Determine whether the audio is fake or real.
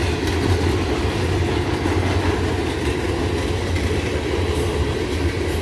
real